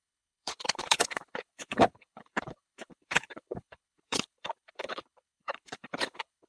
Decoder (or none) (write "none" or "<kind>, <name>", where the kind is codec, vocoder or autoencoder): codec, HILCodec